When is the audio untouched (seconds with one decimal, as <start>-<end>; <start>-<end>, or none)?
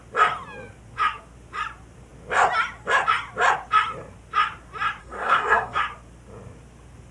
0.0-5.0; 5.8-7.1